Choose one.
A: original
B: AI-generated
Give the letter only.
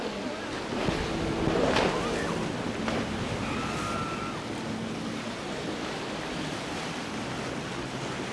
A